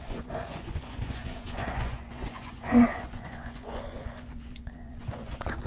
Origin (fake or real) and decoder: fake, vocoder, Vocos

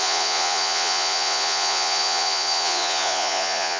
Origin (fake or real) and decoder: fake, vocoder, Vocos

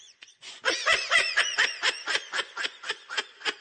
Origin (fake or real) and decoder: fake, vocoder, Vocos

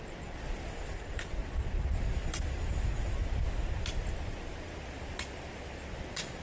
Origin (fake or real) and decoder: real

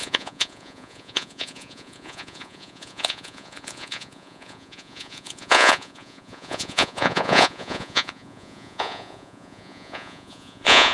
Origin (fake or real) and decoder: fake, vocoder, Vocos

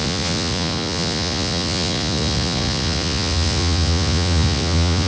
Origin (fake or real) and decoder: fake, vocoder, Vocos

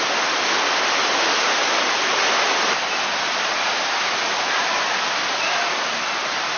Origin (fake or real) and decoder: real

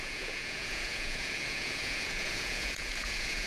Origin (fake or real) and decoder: fake, vocoder, Vocos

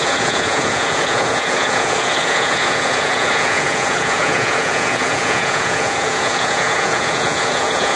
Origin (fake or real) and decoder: fake, vocoder, Vocos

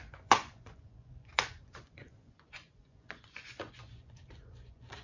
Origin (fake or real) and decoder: fake, vocoder, Vocos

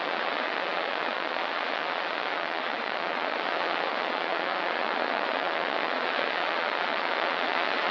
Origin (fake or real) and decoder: fake, vocoder, Vocos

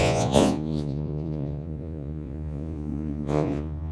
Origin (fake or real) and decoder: fake, vocoder, Vocos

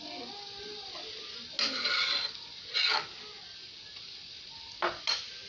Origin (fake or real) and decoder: real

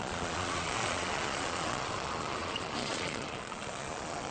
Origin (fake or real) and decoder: fake, vocoder, Vocos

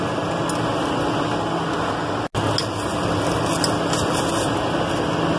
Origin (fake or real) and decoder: real